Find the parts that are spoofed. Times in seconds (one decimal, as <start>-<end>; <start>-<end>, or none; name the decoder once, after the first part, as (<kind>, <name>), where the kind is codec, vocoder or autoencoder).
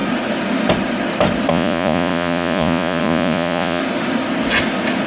1.5-3.8 (vocoder, Vocos)